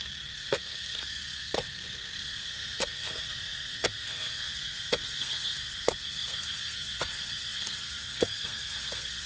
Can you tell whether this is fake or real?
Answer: fake